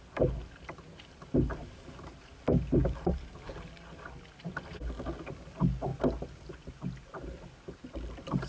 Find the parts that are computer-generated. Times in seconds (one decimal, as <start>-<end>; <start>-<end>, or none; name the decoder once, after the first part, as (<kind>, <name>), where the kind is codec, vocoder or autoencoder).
none